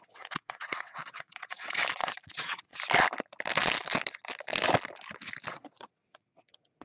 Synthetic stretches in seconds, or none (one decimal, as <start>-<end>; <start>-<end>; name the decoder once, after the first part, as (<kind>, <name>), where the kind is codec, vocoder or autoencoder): 0.0-1.8 (vocoder, WaveNeXt); 2.3-2.7; 5.5-6.8